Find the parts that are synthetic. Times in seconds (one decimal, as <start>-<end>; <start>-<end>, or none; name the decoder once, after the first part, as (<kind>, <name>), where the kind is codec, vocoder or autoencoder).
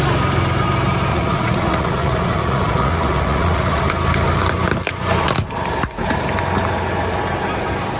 1.1-3.8 (vocoder, Vocos)